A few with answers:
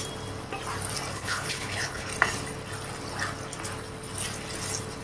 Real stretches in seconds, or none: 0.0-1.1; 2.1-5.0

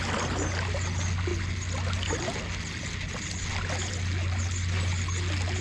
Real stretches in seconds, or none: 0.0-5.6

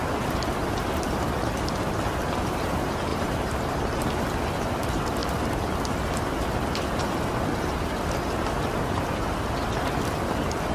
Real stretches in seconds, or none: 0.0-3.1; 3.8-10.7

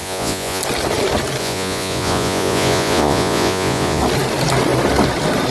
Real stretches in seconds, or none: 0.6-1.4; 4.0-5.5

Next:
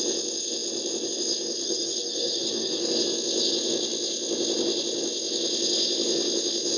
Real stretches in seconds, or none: 0.0-1.6; 2.9-6.8

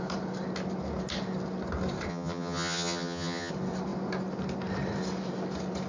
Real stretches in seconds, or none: 0.0-2.1; 3.5-5.9